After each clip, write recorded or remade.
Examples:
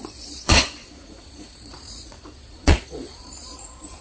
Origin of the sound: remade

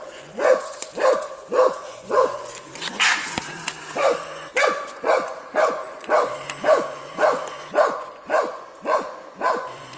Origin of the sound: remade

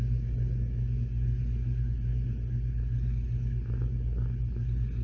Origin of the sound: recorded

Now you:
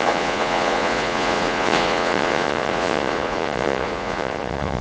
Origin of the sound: remade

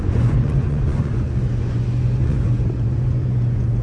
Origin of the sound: remade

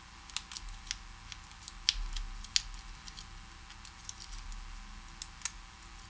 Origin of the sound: recorded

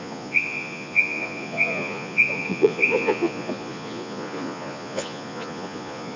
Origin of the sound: remade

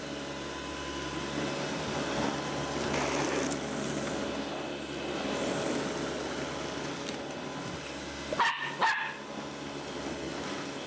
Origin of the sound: recorded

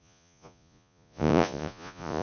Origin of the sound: remade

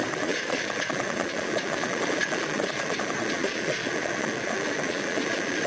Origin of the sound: remade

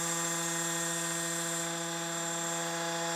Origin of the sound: recorded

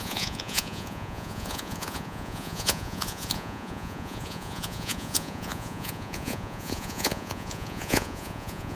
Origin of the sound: remade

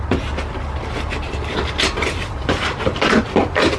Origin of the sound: recorded